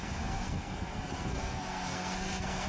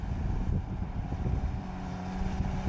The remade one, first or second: first